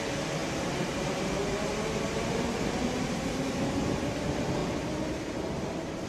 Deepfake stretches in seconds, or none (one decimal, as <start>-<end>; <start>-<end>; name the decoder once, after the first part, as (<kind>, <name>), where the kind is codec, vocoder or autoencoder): none